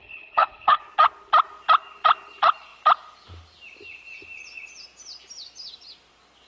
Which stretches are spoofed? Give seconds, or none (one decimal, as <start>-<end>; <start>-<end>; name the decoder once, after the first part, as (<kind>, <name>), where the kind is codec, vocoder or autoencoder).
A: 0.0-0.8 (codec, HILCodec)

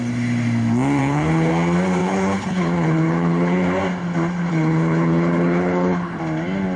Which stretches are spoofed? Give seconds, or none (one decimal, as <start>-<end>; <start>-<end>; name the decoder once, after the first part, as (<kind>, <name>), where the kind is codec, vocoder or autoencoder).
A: 1.0-1.5 (codec, HILCodec); 2.0-3.8; 4.5-6.2

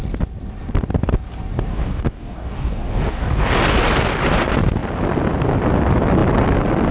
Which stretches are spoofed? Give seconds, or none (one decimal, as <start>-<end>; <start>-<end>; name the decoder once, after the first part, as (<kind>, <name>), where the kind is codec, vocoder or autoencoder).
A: 1.7-3.5 (codec, DAC)

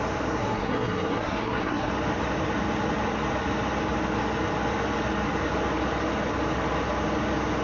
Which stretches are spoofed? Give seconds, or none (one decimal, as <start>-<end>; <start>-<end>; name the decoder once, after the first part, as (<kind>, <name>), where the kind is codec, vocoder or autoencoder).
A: 0.4-1.9 (codec, SNAC)